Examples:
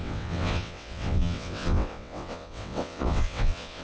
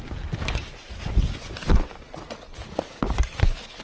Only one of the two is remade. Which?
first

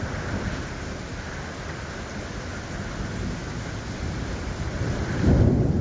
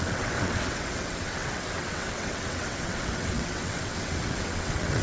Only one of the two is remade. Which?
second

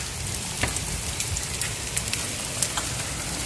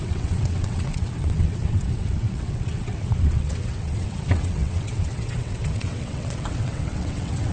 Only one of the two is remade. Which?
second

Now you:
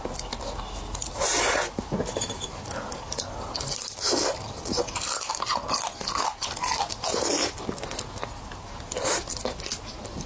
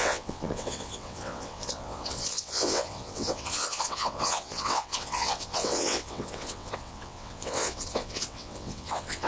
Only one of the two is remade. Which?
second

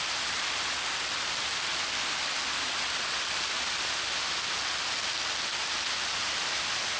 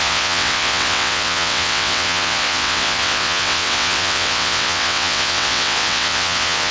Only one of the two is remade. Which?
second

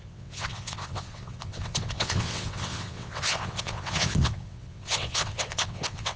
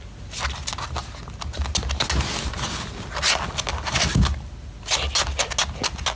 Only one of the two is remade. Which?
first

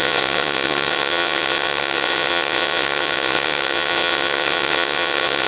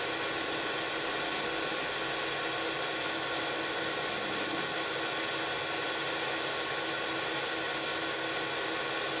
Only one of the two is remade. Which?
first